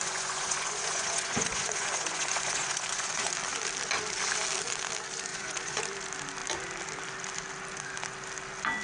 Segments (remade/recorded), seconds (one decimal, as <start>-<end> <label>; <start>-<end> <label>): 0.0-3.3 remade; 3.3-5.3 recorded; 5.3-5.8 remade; 5.8-8.8 recorded